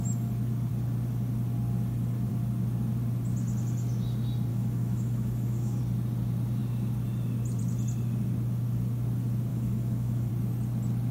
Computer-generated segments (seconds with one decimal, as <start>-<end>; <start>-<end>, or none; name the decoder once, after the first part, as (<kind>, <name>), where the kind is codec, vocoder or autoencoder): 4.5-5.8 (autoencoder, DAC-VAE); 9.5-10.3